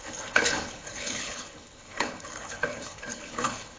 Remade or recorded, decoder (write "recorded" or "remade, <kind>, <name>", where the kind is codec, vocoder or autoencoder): remade, codec, HILCodec